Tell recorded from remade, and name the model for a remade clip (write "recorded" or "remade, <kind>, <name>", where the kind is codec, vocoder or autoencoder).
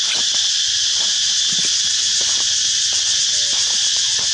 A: recorded